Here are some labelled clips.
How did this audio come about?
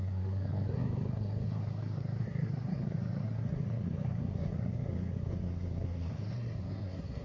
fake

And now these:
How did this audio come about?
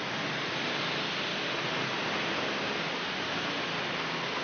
real